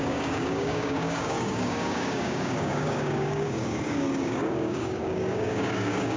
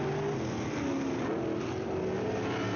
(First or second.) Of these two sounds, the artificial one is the first